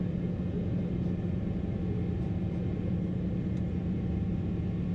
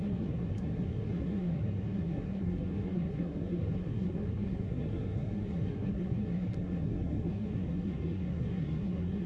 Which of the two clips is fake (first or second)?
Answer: second